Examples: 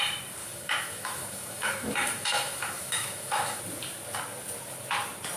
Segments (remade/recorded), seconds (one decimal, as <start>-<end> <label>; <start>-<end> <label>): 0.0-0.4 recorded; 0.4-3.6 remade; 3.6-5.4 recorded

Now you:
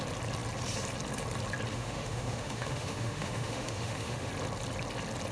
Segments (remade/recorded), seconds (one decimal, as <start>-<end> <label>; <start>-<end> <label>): 0.0-1.7 recorded; 1.7-4.3 remade; 4.3-5.3 recorded

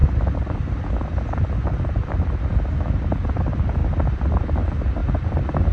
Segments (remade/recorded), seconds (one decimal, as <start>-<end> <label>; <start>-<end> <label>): 0.0-5.7 recorded

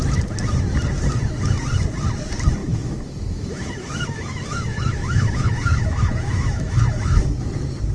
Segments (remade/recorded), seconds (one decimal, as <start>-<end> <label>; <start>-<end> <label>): 0.0-2.6 recorded; 2.6-7.3 remade; 7.3-7.9 recorded

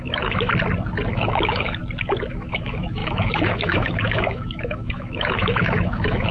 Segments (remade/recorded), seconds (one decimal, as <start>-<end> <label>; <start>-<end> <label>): 0.0-0.5 remade; 0.5-1.1 recorded; 1.1-1.8 remade; 1.8-2.3 recorded; 2.3-6.3 remade

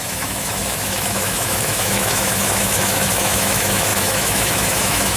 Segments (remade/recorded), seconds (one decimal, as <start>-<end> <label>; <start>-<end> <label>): 0.0-5.2 remade